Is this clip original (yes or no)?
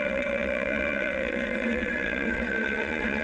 no